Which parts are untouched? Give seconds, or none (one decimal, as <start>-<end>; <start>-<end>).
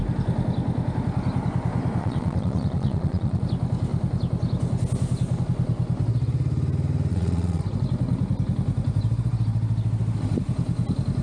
0.0-2.0; 3.4-7.1; 7.6-11.2